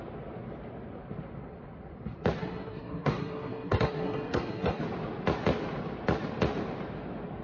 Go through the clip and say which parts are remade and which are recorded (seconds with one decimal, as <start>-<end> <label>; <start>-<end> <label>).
0.0-2.4 recorded; 2.4-4.8 remade; 4.8-7.4 recorded